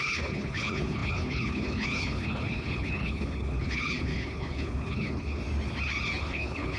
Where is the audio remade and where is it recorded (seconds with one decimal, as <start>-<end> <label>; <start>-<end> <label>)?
0.0-5.4 remade; 5.4-6.2 recorded; 6.2-6.8 remade